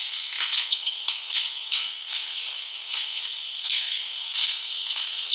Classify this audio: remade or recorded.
remade